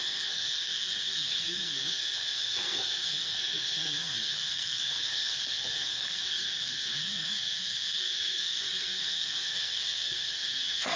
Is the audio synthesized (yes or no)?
yes